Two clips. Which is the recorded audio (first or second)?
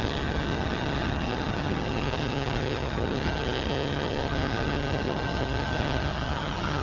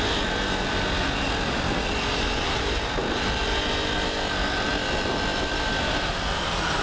second